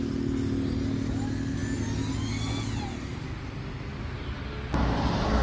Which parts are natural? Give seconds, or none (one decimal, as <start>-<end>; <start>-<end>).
0.0-5.4